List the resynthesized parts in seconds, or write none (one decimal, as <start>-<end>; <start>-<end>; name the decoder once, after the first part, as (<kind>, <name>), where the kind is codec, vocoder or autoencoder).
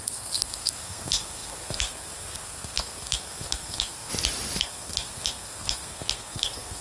0.0-4.1 (codec, SNAC); 4.6-6.8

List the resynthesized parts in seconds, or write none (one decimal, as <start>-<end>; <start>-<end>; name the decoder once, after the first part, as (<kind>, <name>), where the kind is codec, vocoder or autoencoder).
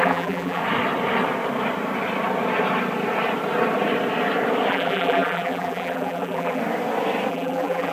0.0-0.6 (vocoder, BigVGAN v2); 4.7-6.6; 7.3-7.9